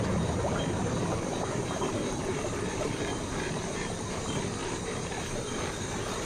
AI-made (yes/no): yes